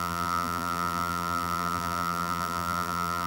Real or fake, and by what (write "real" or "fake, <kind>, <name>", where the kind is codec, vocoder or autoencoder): fake, vocoder, BigVGAN v2